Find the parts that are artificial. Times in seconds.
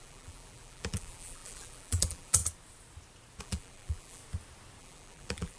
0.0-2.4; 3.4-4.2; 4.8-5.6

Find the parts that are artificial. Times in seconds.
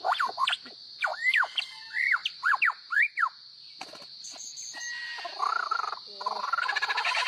1.1-1.6